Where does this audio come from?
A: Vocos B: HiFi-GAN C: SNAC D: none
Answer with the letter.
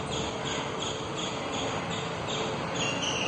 D